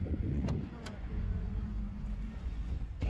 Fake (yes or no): yes